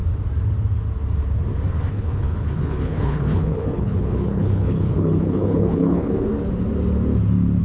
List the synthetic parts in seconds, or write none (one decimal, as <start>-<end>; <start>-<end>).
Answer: 1.9-6.3